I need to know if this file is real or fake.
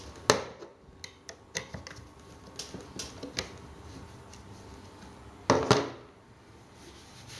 real